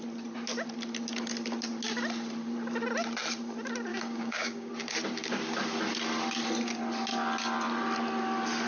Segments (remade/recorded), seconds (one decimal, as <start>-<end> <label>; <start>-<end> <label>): 0.0-3.9 recorded; 3.9-4.7 remade; 4.7-8.7 recorded

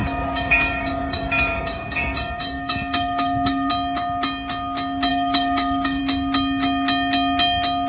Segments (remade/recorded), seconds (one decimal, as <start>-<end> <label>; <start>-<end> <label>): 0.0-3.7 remade; 3.7-5.1 recorded; 5.1-6.0 remade; 6.0-7.9 recorded

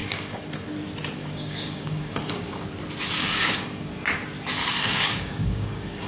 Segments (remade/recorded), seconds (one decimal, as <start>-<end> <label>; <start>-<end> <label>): 0.0-0.5 remade; 0.5-1.2 recorded; 1.2-2.6 remade; 2.6-3.2 recorded; 3.2-3.9 remade; 3.9-4.6 recorded; 4.6-6.1 remade

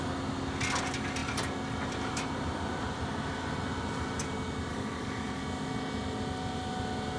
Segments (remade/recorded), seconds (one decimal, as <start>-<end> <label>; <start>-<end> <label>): 0.0-4.7 recorded; 4.7-5.4 remade; 5.4-7.2 recorded